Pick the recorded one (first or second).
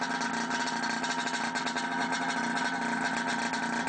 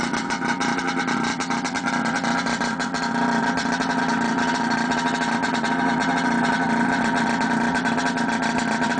first